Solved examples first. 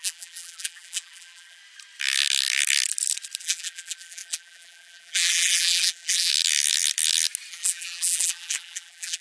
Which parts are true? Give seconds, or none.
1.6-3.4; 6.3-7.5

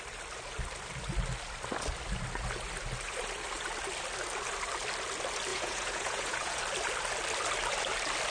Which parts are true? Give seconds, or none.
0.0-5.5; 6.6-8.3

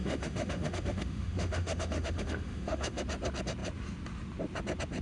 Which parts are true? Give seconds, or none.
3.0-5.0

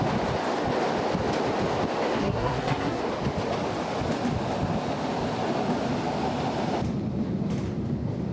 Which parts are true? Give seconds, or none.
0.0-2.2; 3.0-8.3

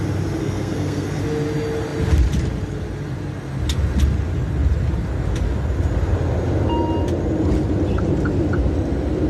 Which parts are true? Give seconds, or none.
0.0-0.4; 1.2-9.3

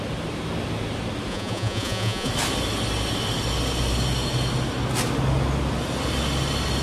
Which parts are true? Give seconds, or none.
0.0-1.3; 2.3-6.8

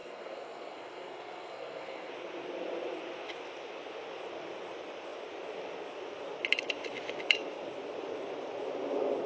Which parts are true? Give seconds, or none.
2.1-9.3